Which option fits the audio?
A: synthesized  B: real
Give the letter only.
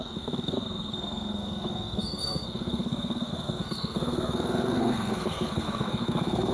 A